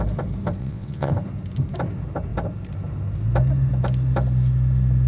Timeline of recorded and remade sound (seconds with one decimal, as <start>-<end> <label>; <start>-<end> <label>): 0.0-0.6 recorded; 0.6-1.1 remade; 1.1-5.1 recorded